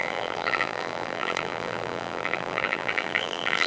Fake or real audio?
fake